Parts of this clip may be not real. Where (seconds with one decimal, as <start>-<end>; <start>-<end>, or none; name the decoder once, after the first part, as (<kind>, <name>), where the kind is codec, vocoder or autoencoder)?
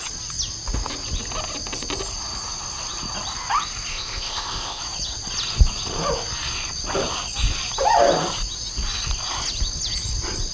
3.9-4.8 (codec, ZipCodec)